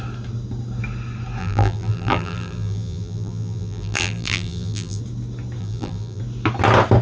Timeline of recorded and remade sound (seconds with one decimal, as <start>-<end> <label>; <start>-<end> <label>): 0.0-1.4 recorded; 1.4-5.0 remade; 5.0-5.6 recorded; 5.6-6.2 remade; 6.2-7.0 recorded